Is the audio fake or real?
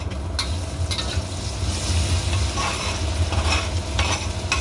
real